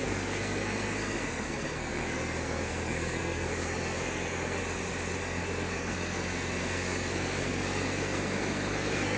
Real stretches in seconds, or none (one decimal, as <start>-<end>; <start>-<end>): 4.6-5.2